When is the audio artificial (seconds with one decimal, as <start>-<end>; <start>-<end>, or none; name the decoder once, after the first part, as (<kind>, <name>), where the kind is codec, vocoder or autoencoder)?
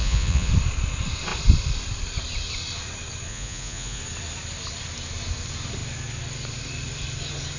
0.0-0.5 (vocoder, Vocos); 3.3-4.0